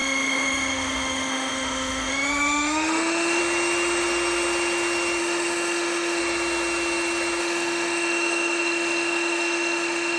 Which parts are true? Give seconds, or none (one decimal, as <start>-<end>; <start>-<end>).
3.4-5.2; 6.2-7.4